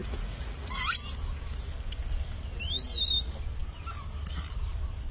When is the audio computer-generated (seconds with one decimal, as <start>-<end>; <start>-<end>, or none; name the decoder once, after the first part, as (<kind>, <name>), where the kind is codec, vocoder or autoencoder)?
0.0-0.8 (vocoder, Vocos)